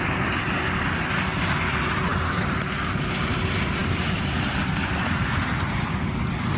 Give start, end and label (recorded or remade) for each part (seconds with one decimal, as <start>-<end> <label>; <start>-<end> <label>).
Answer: 0.0-3.8 recorded; 3.8-5.3 remade; 5.3-6.6 recorded